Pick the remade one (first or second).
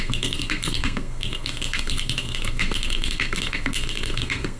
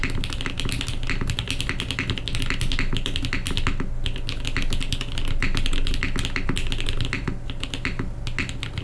first